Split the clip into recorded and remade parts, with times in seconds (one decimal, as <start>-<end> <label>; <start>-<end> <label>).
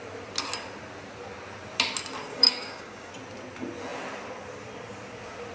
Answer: 0.0-2.3 recorded; 2.3-3.1 remade; 3.1-5.5 recorded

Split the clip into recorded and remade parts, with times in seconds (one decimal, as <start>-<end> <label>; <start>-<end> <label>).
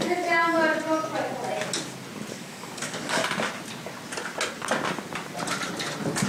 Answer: 0.0-0.6 remade; 0.6-2.3 recorded; 2.3-3.2 remade; 3.2-6.3 recorded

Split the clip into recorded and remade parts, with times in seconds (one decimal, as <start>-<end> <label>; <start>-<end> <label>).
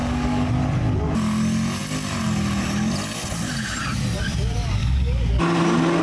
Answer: 0.0-0.5 remade; 0.5-4.8 recorded; 4.8-5.4 remade; 5.4-6.0 recorded